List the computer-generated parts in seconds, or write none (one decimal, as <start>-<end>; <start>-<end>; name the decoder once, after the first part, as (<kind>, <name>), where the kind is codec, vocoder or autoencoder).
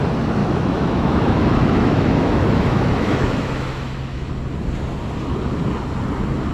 0.4-4.3 (autoencoder, DAC-VAE)